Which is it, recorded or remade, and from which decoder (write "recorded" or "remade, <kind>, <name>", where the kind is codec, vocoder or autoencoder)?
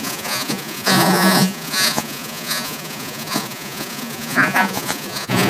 remade, vocoder, Vocos